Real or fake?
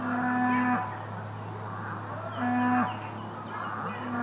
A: real